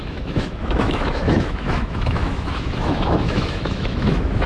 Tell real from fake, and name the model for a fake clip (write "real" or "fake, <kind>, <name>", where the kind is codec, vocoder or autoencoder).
fake, autoencoder, DAC-VAE